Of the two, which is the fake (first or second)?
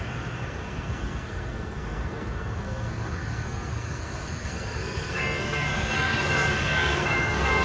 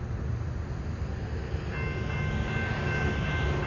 first